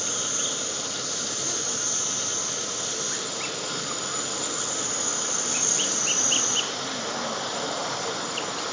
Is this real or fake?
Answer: real